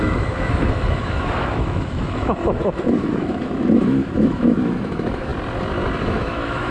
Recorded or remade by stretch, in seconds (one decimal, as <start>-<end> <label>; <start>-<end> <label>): 0.0-5.3 remade; 5.3-6.0 recorded; 6.0-6.7 remade

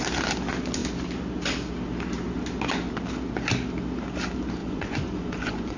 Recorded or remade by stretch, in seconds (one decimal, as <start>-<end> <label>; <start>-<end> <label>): 0.0-4.6 recorded; 4.6-5.8 remade